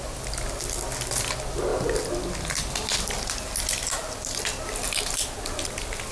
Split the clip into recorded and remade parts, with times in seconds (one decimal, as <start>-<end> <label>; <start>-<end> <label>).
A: 0.0-6.1 recorded